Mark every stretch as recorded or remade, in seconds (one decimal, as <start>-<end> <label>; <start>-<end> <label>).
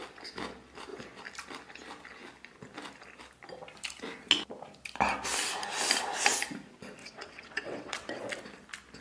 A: 0.0-7.0 recorded; 7.0-8.2 remade; 8.2-9.0 recorded